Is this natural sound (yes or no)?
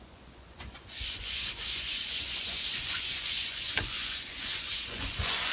no